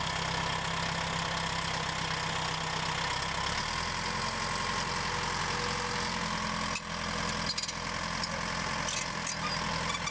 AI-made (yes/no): no